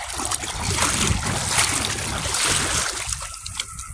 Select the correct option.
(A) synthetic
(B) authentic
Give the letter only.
B